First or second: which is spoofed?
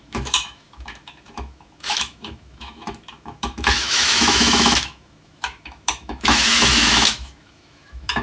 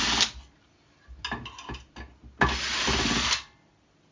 first